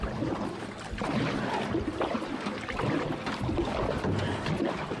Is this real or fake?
real